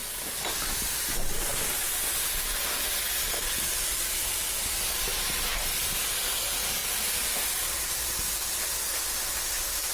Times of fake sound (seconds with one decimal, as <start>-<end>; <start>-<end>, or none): 0.0-0.5